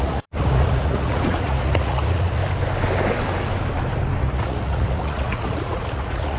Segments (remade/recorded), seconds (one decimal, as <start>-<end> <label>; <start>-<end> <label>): 0.0-2.4 remade; 2.4-4.2 recorded; 4.2-6.4 remade